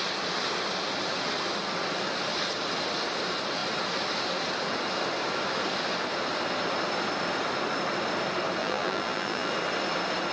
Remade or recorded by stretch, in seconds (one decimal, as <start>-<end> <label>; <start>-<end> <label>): 0.0-8.6 recorded; 8.6-9.5 remade; 9.5-10.3 recorded